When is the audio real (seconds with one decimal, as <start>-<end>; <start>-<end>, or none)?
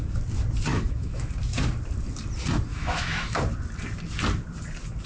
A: 0.0-0.7; 1.3-2.7; 3.4-5.1